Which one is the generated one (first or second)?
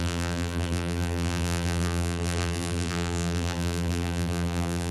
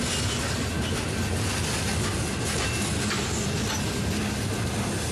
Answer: first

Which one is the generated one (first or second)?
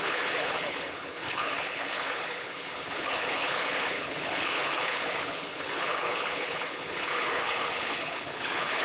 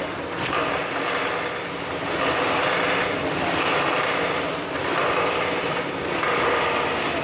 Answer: first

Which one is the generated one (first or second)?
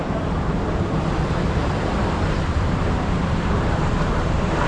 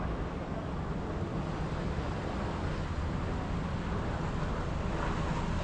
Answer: first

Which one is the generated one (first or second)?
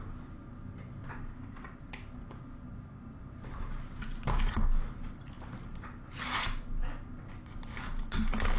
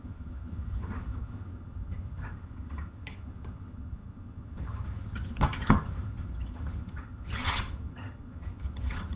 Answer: second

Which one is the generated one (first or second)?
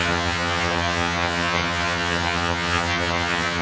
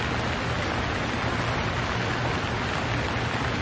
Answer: first